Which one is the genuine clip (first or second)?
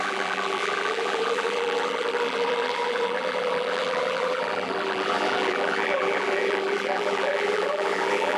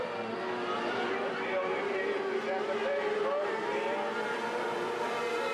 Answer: second